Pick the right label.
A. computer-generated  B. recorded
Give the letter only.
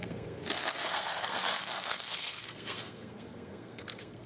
A